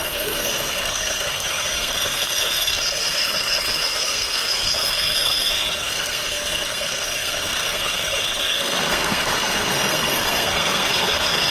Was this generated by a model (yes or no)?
yes